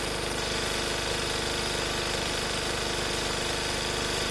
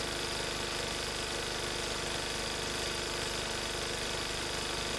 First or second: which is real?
second